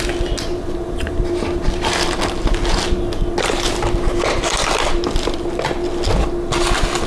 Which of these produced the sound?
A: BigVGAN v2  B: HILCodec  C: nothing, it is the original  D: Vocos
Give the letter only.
C